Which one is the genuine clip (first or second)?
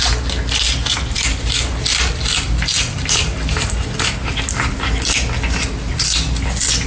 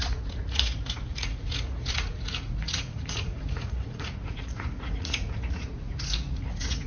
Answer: first